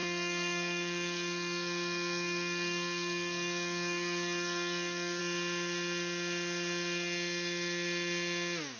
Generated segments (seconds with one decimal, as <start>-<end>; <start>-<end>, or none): 0.0-5.2